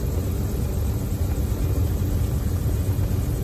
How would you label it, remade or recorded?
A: remade